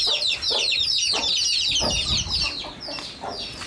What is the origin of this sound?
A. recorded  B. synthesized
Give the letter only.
A